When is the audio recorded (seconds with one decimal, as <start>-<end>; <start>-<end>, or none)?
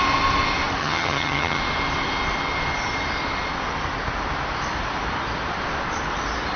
0.0-0.8; 1.6-6.6